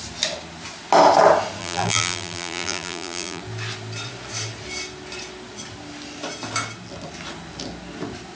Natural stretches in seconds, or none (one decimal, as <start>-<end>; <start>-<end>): 0.0-1.6; 3.4-8.4